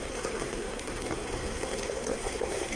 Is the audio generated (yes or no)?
yes